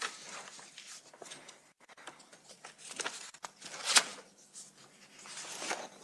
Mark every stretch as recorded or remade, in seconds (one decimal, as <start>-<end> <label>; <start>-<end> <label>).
0.0-6.0 recorded